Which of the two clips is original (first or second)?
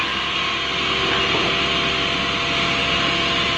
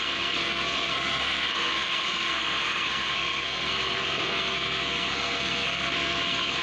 first